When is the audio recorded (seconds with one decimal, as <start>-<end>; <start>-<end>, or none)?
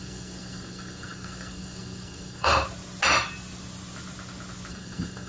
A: 2.5-4.7